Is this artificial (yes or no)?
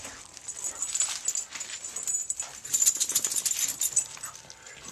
no